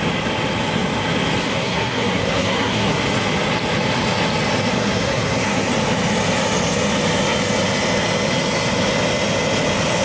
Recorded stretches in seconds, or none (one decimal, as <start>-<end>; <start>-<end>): 0.0-1.4; 3.0-4.7; 5.7-10.0